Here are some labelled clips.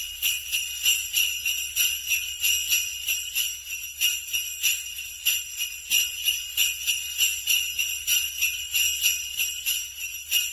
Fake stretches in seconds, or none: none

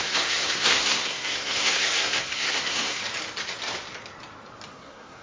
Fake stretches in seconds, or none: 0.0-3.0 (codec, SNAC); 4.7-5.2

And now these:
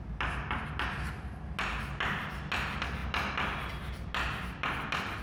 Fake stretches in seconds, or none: none

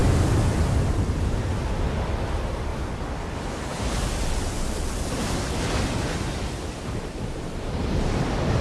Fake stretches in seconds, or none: none